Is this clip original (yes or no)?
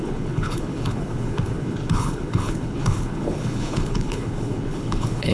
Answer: no